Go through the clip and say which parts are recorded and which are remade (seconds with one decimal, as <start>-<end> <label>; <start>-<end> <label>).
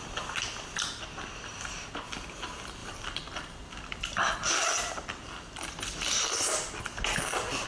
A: 0.0-2.8 recorded; 2.8-4.5 remade; 4.5-7.7 recorded